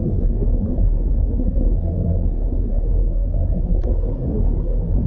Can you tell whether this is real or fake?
fake